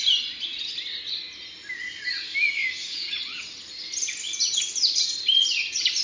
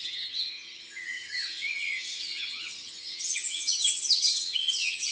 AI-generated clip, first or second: second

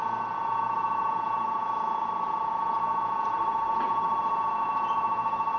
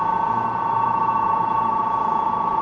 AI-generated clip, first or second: second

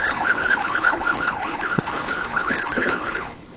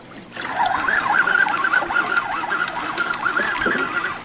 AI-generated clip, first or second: first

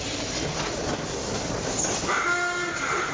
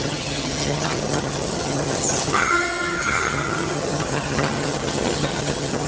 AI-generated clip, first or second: second